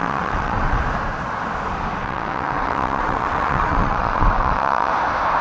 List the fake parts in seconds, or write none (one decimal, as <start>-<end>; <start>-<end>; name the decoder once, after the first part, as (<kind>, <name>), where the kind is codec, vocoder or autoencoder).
0.0-0.8 (vocoder, WaveNeXt); 2.0-4.9